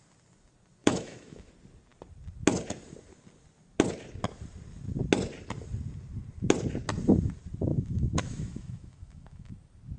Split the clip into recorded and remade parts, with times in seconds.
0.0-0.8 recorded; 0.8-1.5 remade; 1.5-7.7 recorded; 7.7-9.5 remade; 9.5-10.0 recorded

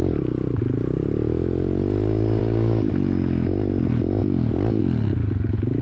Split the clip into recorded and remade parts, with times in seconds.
0.0-2.4 recorded; 2.4-2.9 remade; 2.9-5.8 recorded

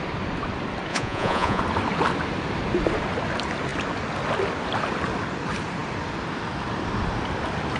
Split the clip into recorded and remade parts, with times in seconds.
0.0-0.9 recorded; 0.9-1.6 remade; 1.6-7.8 recorded

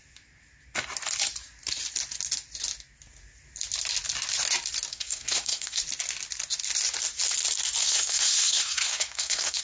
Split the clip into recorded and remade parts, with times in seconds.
0.0-4.9 recorded; 4.9-5.8 remade; 5.8-7.8 recorded; 7.8-9.6 remade

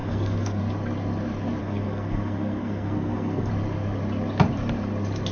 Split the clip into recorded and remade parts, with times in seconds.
0.0-0.6 remade; 0.6-1.6 recorded; 1.6-3.5 remade; 3.5-5.3 recorded

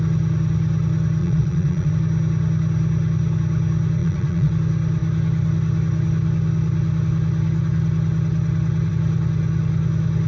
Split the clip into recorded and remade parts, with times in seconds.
0.0-1.2 recorded; 1.2-1.9 remade; 1.9-4.0 recorded; 4.0-4.5 remade; 4.5-10.3 recorded

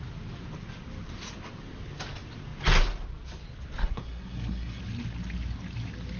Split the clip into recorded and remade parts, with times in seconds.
0.0-3.8 recorded; 3.8-4.8 remade; 4.8-6.2 recorded